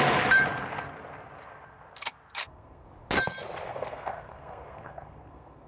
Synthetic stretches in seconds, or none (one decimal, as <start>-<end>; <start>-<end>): 2.4-2.9; 3.7-5.7